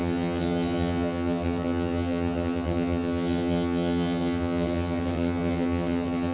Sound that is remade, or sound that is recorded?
remade